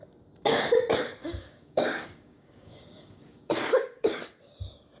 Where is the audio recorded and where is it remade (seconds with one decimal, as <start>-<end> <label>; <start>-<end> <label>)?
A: 0.0-1.2 recorded; 1.2-4.2 remade; 4.2-5.0 recorded